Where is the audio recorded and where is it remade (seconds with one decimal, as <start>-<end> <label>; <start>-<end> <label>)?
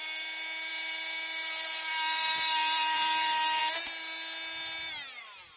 0.0-0.7 recorded; 0.7-3.6 remade; 3.6-5.6 recorded